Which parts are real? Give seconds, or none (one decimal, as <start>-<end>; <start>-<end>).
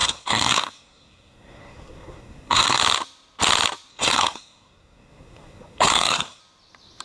2.8-3.9; 6.4-7.0